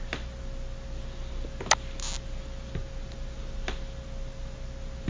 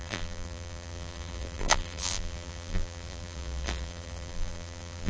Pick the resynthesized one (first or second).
second